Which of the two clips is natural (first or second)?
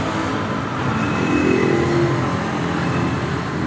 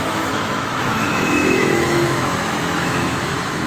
first